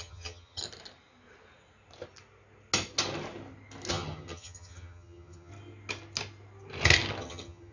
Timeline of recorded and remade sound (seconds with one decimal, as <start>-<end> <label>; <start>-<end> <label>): 0.0-0.6 remade; 0.6-3.9 recorded; 3.9-5.5 remade; 5.5-7.2 recorded; 7.2-7.7 remade